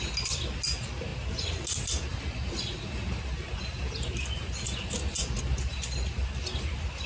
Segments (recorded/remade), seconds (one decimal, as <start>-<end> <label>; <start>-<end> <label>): 0.0-7.1 recorded